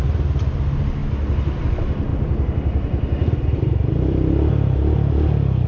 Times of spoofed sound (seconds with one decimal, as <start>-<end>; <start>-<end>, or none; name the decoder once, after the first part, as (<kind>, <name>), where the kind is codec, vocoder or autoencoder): 2.1-4.3 (vocoder, BigVGAN v2)